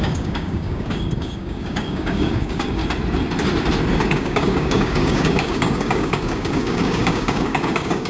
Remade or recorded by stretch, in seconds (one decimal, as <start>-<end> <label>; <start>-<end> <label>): 0.0-2.8 remade; 2.8-4.0 recorded; 4.0-8.1 remade